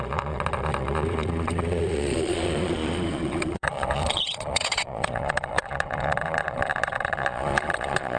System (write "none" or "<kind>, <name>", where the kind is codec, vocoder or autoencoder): vocoder, Vocos